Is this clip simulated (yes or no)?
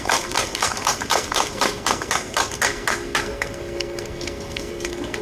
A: yes